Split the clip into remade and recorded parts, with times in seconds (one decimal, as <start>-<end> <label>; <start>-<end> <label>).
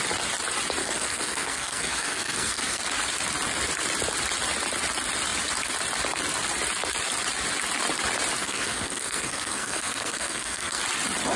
0.0-0.8 recorded; 0.8-2.8 remade; 2.8-8.4 recorded; 8.4-10.8 remade; 10.8-11.4 recorded